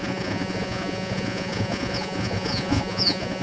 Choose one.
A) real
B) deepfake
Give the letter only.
B